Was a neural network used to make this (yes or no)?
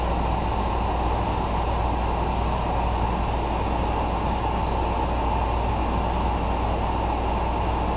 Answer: no